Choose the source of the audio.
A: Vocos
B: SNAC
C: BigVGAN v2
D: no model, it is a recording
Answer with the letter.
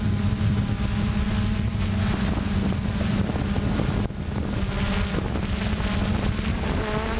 D